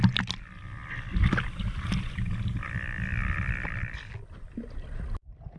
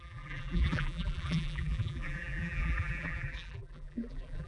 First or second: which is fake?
second